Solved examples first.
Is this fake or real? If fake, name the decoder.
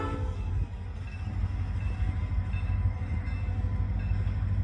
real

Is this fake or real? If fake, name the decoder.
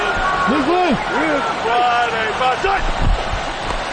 real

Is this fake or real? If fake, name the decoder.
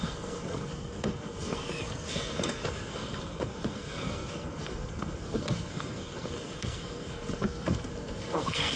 fake, codec, SNAC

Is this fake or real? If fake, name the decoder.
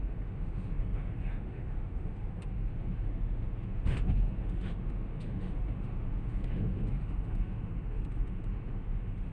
fake, autoencoder, DAC-VAE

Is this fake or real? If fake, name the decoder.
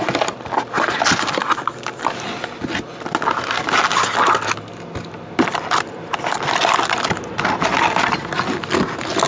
real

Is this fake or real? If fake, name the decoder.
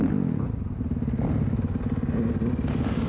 real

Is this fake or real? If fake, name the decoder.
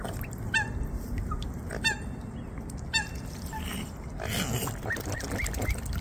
real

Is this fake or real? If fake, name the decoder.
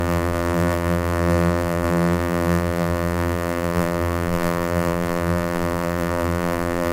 fake, vocoder, BigVGAN v2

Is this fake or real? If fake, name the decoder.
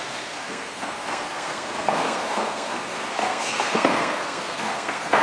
fake, codec, SNAC